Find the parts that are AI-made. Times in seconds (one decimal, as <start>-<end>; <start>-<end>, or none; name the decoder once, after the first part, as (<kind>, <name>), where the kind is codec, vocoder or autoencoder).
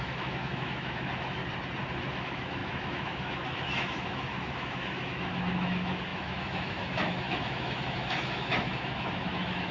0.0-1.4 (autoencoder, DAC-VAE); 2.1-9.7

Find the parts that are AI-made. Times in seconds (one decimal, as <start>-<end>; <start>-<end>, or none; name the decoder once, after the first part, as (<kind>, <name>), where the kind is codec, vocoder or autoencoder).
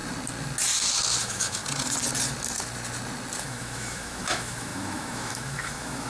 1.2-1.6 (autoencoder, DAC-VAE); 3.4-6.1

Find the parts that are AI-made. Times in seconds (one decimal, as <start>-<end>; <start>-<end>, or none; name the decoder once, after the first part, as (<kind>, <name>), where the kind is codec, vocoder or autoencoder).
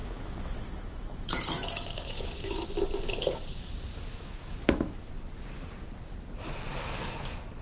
0.0-2.7 (autoencoder, DAC-VAE); 3.9-5.1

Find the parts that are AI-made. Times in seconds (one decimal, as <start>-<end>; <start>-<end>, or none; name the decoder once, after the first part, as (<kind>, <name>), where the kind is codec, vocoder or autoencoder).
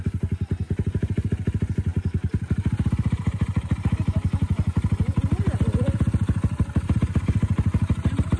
none